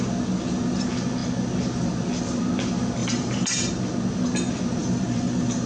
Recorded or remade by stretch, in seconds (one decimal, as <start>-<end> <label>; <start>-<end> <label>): 0.0-3.0 recorded; 3.0-3.7 remade; 3.7-4.8 recorded; 4.8-5.7 remade